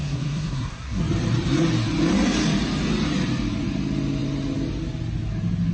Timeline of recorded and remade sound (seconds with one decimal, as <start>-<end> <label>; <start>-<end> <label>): 0.0-1.0 remade; 1.0-5.7 recorded